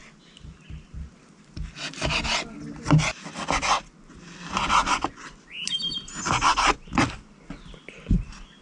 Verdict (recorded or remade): recorded